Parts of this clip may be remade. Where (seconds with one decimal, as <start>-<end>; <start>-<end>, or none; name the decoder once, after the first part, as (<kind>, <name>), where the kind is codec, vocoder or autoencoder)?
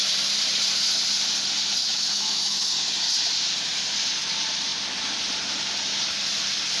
1.8-2.7 (autoencoder, DAC-VAE)